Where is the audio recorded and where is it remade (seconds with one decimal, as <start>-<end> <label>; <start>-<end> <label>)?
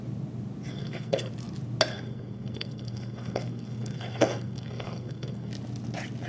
0.0-0.7 recorded; 0.7-1.3 remade; 1.3-1.9 recorded; 1.9-5.5 remade; 5.5-6.3 recorded